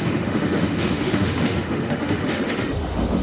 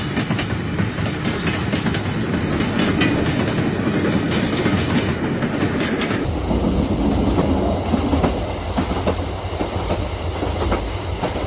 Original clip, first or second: second